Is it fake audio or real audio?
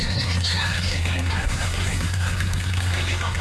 fake